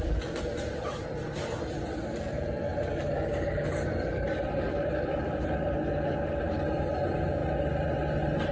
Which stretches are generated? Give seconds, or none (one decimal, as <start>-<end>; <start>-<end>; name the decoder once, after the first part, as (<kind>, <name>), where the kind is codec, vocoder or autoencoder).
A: none